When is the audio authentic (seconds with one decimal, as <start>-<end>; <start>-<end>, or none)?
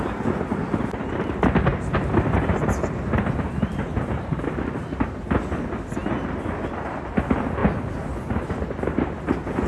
0.0-9.7